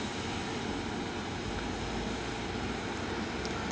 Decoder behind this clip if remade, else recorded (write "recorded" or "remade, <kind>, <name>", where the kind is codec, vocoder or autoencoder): recorded